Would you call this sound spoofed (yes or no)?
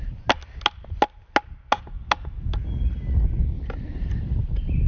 no